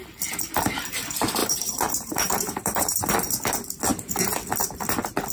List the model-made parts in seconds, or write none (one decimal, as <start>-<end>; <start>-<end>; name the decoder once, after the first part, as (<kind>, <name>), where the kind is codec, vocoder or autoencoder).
1.4-3.1 (vocoder, BigVGAN v2)